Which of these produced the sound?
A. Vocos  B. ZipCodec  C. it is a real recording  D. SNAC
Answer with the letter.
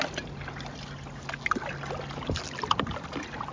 C